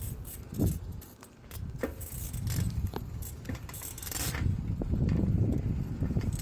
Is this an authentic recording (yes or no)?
yes